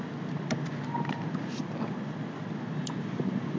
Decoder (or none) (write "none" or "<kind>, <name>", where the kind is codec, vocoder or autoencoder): none